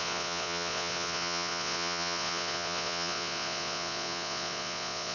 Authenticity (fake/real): fake